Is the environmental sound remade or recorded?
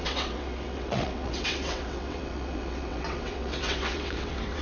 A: remade